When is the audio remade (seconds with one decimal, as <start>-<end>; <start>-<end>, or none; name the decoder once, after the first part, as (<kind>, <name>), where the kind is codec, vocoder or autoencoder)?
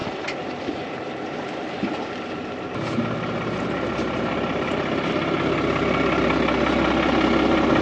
0.0-2.0 (vocoder, BigVGAN v2)